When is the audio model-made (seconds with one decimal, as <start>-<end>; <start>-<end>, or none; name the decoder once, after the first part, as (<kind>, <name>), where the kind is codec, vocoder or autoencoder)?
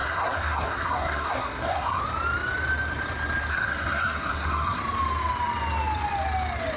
0.0-2.0 (codec, SNAC); 3.5-4.8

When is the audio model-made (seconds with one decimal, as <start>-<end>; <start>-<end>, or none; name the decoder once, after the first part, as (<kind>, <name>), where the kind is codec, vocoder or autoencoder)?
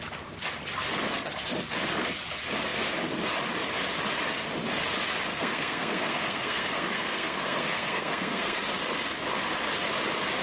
5.3-8.6 (codec, SNAC)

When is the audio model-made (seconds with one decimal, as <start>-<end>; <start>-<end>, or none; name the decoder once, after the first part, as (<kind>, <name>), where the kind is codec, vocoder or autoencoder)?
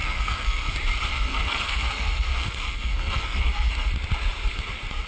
0.0-0.7 (codec, SNAC); 1.1-3.7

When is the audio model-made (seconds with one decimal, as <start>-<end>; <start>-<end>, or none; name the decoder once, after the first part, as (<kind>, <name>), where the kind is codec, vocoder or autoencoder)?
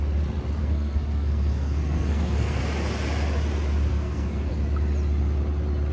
0.6-2.6 (codec, SNAC); 3.9-4.5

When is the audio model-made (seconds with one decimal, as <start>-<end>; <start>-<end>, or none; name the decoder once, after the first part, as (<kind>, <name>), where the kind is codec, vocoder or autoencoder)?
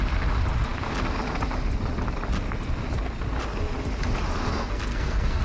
4.5-5.4 (codec, SNAC)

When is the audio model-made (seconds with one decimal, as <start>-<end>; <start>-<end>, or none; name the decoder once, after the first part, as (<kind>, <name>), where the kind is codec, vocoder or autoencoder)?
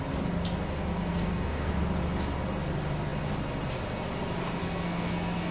0.9-1.7 (codec, SNAC); 4.6-5.5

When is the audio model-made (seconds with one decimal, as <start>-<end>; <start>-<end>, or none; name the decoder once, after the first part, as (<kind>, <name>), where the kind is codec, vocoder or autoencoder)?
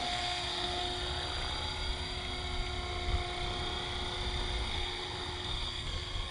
0.0-0.8 (codec, SNAC); 4.6-6.3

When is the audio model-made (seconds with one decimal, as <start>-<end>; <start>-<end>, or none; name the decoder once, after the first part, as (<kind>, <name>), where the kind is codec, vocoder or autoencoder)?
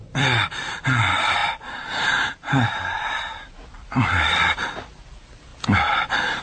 none